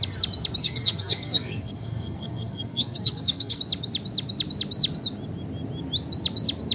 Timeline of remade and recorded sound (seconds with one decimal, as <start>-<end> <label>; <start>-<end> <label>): 0.0-0.6 recorded; 0.6-3.6 remade; 3.6-6.7 recorded